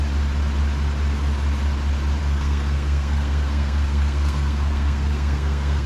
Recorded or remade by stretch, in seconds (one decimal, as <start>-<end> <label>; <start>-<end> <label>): 0.0-2.2 recorded; 2.2-5.9 remade